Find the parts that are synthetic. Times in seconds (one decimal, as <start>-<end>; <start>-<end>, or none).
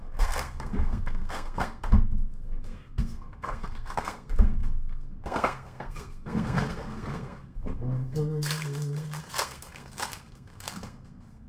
0.0-11.5